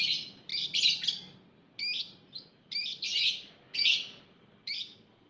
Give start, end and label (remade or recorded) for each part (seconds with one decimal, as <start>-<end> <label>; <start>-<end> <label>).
0.0-5.3 recorded